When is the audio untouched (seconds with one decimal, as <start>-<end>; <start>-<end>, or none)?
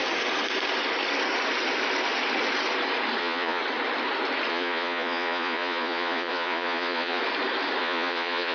0.0-3.2; 3.6-4.5; 7.2-7.8